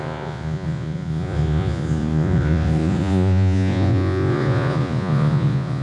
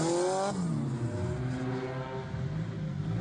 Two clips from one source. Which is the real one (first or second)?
second